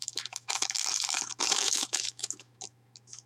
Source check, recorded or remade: remade